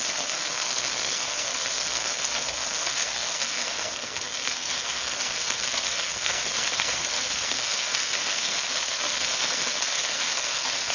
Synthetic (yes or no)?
yes